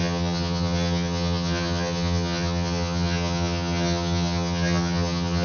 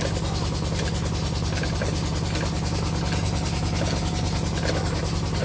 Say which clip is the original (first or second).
second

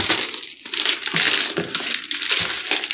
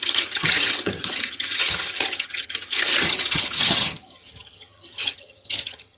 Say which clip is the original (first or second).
first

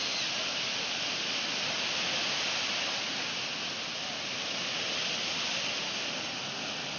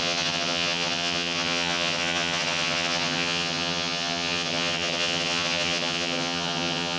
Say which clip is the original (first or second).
first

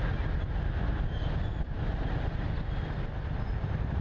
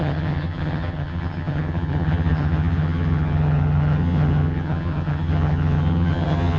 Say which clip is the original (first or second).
first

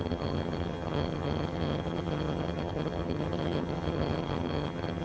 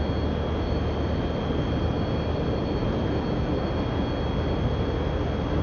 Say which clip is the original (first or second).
second